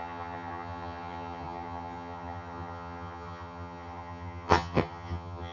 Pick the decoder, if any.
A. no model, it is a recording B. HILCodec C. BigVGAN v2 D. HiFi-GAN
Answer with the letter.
D